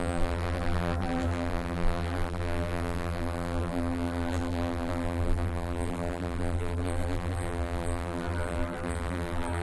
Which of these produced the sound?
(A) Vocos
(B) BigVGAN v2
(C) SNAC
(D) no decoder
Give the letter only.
B